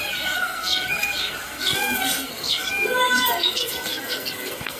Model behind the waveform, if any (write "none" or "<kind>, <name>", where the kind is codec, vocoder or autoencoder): codec, SNAC